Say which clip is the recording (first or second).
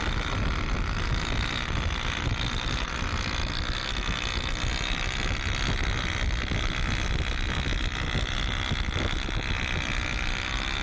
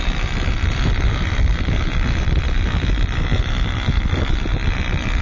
first